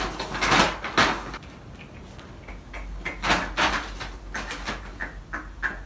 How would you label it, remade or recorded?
recorded